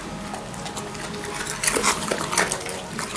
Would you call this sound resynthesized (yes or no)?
no